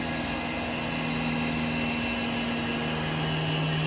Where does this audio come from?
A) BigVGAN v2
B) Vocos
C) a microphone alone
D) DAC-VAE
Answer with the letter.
C